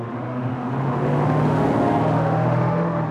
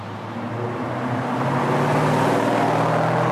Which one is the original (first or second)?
second